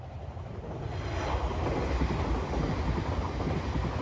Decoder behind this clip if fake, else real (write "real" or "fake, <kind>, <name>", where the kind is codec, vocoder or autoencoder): real